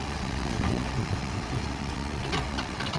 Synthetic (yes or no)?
yes